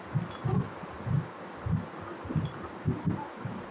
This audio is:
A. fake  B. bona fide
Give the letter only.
B